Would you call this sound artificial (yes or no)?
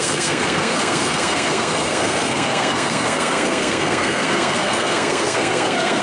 yes